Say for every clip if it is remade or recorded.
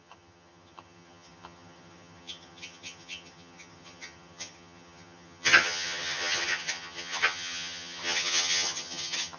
remade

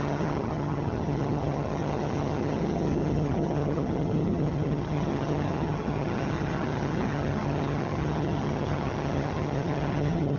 remade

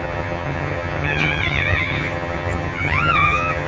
remade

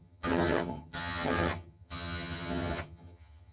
remade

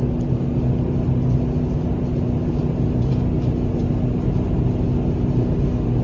recorded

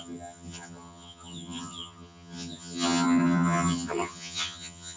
remade